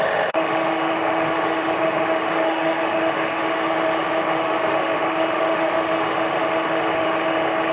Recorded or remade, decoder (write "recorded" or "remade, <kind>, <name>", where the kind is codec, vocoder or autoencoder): remade, autoencoder, DAC-VAE